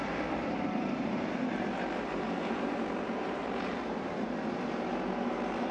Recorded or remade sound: remade